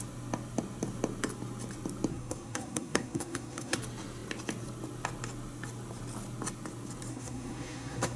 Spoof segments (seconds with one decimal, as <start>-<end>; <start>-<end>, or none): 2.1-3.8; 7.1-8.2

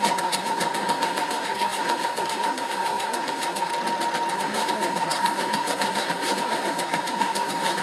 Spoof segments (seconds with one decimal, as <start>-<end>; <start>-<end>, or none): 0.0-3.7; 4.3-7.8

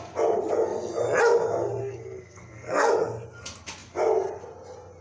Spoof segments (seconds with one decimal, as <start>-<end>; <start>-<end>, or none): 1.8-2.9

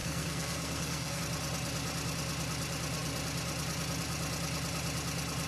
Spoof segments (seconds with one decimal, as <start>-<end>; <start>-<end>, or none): 0.0-1.2

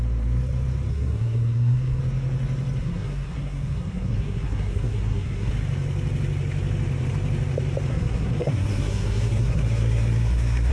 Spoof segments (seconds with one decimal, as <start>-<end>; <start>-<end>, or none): 0.9-2.0; 2.8-5.5; 7.9-10.7

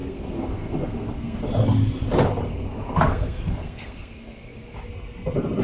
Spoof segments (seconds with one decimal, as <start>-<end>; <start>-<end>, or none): 0.0-1.4; 2.5-4.8